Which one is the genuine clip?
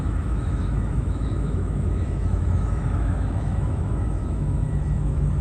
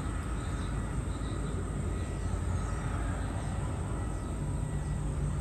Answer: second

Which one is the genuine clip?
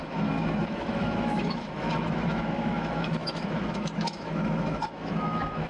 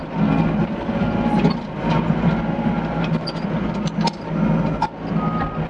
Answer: second